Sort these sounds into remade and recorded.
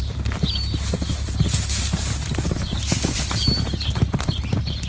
recorded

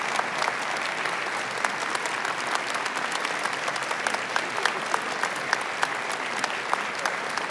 recorded